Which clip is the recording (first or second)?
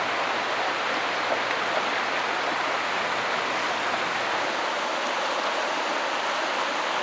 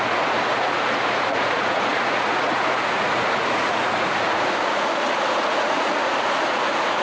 first